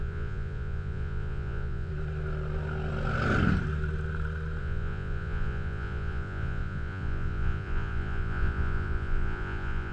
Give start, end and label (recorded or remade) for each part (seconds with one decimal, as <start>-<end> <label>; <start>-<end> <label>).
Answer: 0.0-1.9 remade; 1.9-4.6 recorded; 4.6-9.9 remade